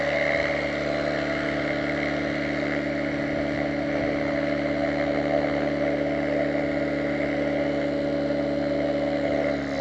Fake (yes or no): no